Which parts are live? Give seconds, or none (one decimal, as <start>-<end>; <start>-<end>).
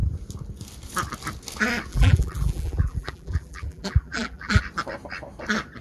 0.0-1.9; 4.6-5.8